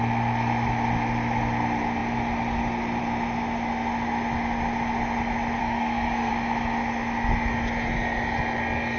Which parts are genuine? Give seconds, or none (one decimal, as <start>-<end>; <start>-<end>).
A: 0.0-5.6; 6.3-9.0